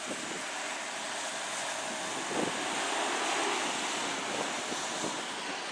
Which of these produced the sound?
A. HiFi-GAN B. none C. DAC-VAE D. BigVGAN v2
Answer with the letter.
B